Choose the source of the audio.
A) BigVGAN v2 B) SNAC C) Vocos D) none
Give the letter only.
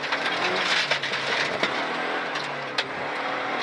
D